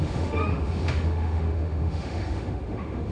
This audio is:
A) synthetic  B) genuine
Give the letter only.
A